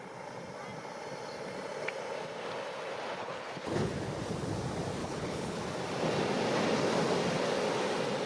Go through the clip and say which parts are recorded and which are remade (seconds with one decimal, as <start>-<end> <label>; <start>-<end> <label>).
0.0-3.2 recorded; 3.2-3.9 remade; 3.9-5.0 recorded; 5.0-5.6 remade; 5.6-8.3 recorded